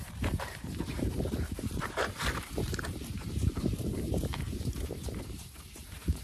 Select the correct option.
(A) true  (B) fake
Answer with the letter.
B